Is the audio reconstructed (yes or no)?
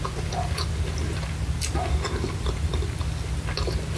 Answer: no